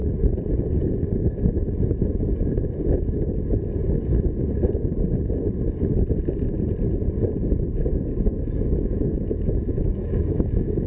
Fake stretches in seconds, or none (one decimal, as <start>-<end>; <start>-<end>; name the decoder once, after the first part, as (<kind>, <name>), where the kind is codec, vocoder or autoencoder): 7.9-10.9 (autoencoder, DAC-VAE)